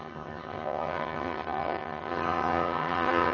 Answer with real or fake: fake